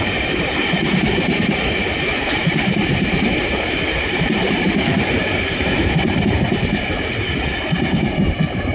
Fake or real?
fake